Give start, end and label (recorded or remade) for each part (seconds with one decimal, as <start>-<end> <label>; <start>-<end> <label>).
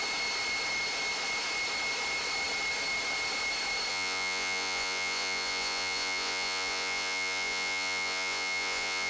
0.0-3.9 recorded; 3.9-9.1 remade